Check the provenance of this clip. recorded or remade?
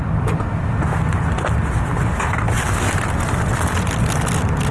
recorded